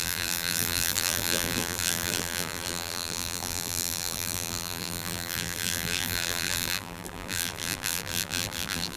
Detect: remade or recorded remade